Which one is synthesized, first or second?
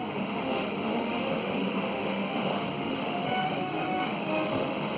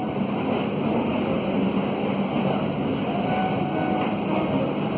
first